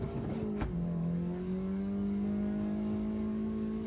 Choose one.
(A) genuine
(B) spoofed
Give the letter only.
B